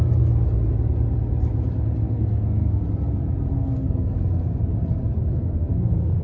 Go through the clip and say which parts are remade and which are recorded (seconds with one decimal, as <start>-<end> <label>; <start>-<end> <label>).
0.0-2.0 recorded; 2.0-2.8 remade; 2.8-3.6 recorded; 3.6-4.3 remade; 4.3-5.3 recorded; 5.3-6.2 remade